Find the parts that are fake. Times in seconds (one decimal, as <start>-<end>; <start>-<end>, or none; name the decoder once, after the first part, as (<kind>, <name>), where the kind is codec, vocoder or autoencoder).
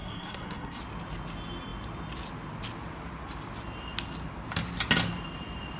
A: 0.0-0.8 (codec, SNAC)